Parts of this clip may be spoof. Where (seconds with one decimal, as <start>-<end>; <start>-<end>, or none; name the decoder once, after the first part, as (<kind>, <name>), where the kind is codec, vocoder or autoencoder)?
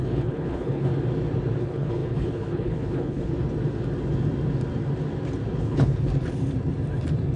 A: 0.0-0.9 (codec, HILCodec); 1.6-3.3; 5.6-6.1